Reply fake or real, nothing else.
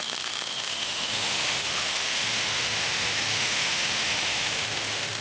fake